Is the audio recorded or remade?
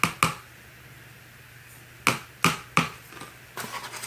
recorded